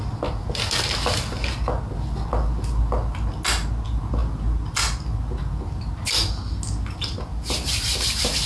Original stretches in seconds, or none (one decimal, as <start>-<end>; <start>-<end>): 0.0-8.5